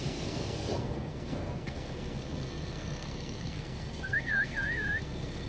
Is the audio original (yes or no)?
no